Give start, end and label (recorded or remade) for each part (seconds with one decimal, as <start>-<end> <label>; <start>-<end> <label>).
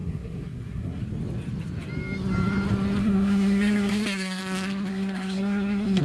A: 0.0-1.0 remade; 1.0-3.0 recorded; 3.0-4.4 remade; 4.4-4.9 recorded; 4.9-6.0 remade